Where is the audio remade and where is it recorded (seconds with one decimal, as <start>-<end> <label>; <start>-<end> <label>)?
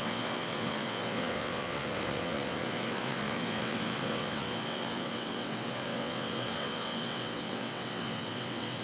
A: 0.0-8.8 remade